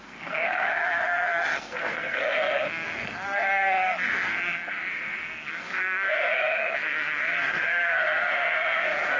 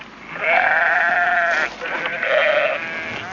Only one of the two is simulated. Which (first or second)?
first